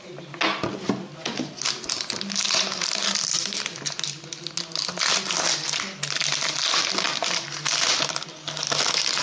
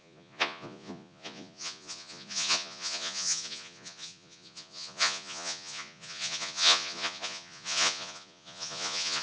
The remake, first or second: second